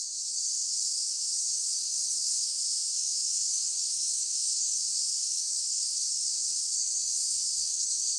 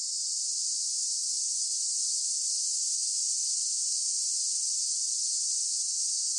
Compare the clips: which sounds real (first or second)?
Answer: second